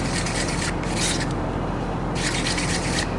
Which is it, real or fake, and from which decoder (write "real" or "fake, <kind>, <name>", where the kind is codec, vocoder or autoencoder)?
real